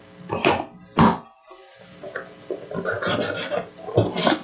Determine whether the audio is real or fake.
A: real